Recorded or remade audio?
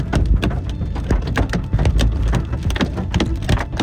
recorded